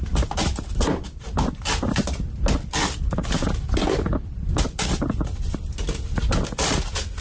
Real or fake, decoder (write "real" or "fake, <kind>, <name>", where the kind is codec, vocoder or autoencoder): real